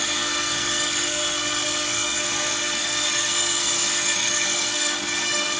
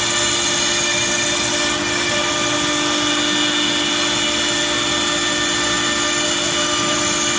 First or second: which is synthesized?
first